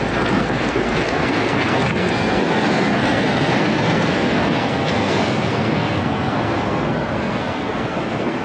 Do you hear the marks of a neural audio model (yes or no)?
yes